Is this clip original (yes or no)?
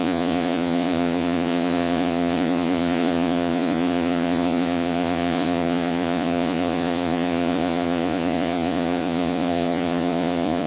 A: no